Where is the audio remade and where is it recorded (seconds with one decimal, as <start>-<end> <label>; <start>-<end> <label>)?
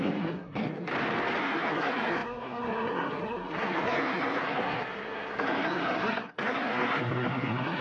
0.0-0.9 remade; 0.9-1.4 recorded; 1.4-7.8 remade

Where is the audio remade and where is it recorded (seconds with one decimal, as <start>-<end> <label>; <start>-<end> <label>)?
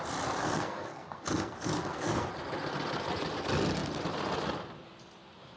0.0-0.4 recorded; 0.4-2.3 remade; 2.3-5.6 recorded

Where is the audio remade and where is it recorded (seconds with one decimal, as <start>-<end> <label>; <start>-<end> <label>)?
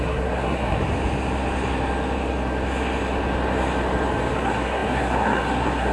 0.0-0.8 remade; 0.8-4.3 recorded; 4.3-5.9 remade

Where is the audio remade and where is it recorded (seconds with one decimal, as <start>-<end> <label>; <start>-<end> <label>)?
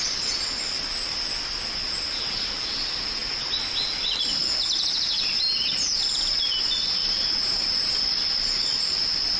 0.0-9.4 recorded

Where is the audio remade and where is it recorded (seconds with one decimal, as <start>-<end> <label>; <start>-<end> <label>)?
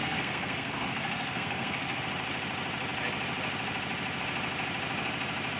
0.0-2.0 remade; 2.0-5.6 recorded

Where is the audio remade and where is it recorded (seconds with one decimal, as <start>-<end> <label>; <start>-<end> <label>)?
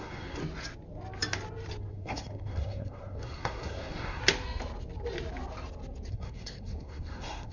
0.0-0.4 remade; 0.4-1.9 recorded; 1.9-4.2 remade; 4.2-6.1 recorded; 6.1-7.5 remade